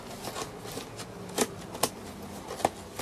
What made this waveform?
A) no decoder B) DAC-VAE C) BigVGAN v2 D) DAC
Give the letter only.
A